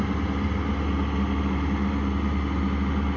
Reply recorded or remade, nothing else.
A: recorded